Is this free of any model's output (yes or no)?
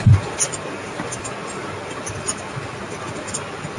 yes